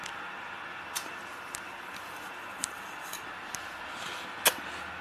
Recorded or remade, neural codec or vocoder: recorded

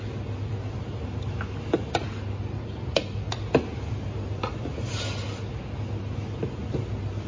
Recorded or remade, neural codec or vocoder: recorded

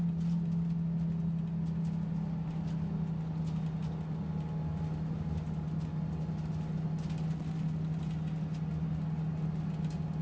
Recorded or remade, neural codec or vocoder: recorded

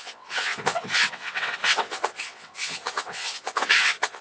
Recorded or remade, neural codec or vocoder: remade, vocoder, WaveNeXt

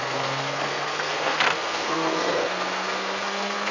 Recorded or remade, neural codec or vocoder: remade, codec, SNAC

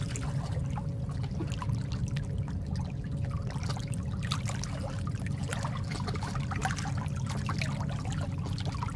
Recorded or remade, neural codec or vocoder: recorded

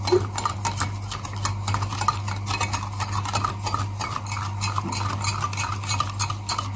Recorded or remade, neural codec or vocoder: recorded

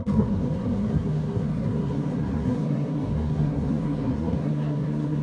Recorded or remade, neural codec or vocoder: remade, codec, SNAC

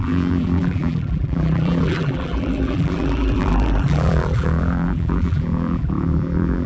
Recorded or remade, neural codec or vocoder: remade, vocoder, BigVGAN v2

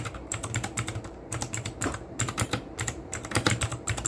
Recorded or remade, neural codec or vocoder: remade, vocoder, BigVGAN v2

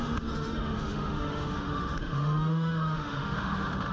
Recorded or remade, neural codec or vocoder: remade, autoencoder, DAC-VAE